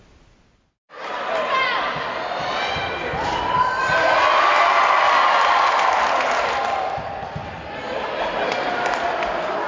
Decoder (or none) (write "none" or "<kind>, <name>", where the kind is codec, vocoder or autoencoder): none